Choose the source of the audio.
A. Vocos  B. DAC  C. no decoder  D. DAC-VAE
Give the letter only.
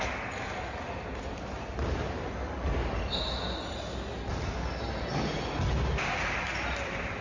C